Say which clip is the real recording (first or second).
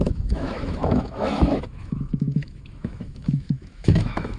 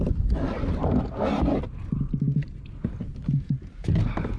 second